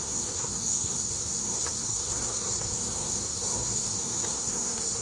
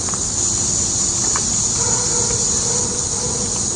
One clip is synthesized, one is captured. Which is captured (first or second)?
second